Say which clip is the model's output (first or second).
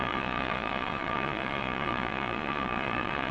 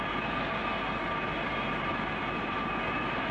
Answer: first